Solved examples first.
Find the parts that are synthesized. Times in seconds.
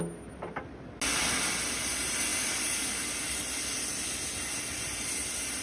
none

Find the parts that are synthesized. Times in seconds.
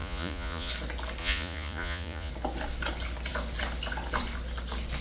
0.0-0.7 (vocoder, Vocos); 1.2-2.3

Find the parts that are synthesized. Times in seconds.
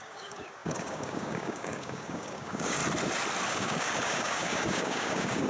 0.0-2.8 (codec, DAC); 3.5-5.5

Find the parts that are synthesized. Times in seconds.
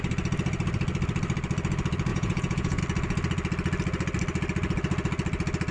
2.1-2.8 (vocoder, Vocos)